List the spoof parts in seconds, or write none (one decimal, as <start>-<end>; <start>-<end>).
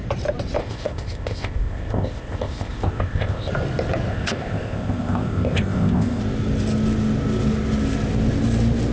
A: 0.6-3.5; 4.1-6.2